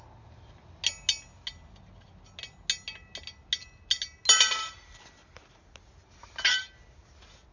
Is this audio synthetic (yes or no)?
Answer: no